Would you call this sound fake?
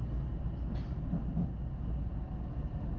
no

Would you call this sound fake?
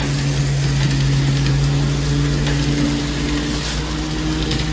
no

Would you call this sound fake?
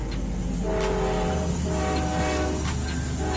no